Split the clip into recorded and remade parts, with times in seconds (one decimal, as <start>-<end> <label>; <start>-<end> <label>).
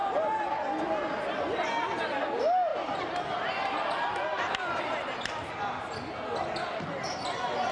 0.0-7.7 recorded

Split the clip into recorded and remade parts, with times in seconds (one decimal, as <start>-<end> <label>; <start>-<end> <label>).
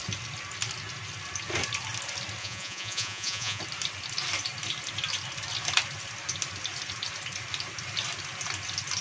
0.0-2.4 recorded; 2.4-3.6 remade; 3.6-9.0 recorded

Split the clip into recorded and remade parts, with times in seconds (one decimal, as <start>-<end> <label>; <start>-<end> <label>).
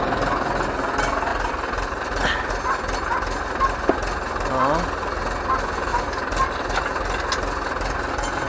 0.0-1.3 recorded; 1.3-2.5 remade; 2.5-5.9 recorded; 5.9-6.8 remade; 6.8-8.5 recorded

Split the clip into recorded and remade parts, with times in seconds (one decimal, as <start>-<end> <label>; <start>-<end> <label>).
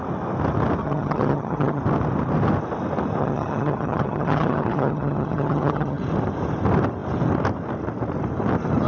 0.0-0.8 recorded; 0.8-1.8 remade; 1.8-3.2 recorded; 3.2-6.0 remade; 6.0-8.9 recorded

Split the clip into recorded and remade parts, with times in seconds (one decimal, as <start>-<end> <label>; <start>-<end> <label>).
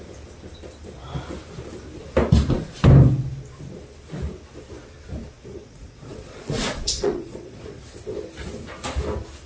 0.0-5.6 recorded; 5.6-7.8 remade; 7.8-9.5 recorded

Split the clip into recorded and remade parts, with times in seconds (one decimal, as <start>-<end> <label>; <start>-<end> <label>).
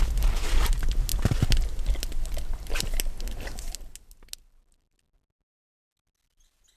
0.0-6.8 recorded